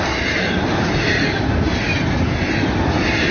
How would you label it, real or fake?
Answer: real